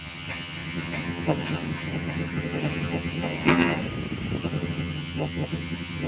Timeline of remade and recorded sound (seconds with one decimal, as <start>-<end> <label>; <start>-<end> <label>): 0.0-3.8 remade; 3.8-4.4 recorded; 4.4-6.1 remade